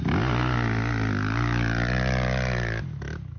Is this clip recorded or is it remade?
recorded